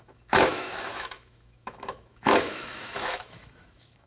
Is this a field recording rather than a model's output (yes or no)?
no